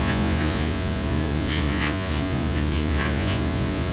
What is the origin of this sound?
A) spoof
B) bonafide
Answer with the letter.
A